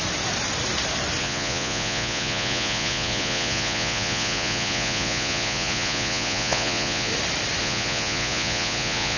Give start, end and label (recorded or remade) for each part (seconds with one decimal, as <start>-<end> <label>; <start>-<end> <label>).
0.0-1.2 recorded; 1.2-7.1 remade; 7.1-7.6 recorded; 7.6-9.2 remade